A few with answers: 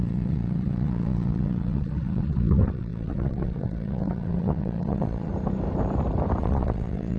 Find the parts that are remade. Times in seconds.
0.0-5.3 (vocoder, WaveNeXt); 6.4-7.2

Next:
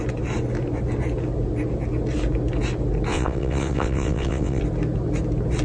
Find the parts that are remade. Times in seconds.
3.1-4.6 (vocoder, WaveNeXt)

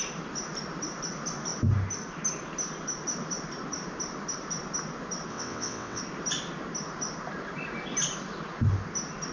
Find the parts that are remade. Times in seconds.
5.3-6.0 (vocoder, WaveNeXt)

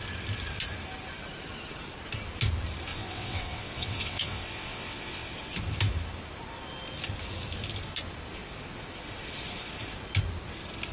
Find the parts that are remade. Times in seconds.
2.9-5.3 (vocoder, WaveNeXt)

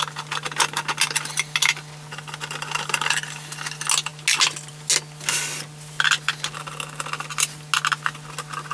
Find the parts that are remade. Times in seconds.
none

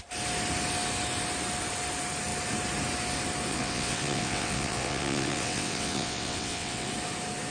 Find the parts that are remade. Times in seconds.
3.5-6.9 (vocoder, WaveNeXt)